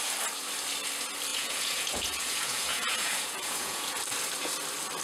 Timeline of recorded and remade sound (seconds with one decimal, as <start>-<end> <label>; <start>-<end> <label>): 0.0-1.3 recorded; 1.3-4.0 remade; 4.0-5.0 recorded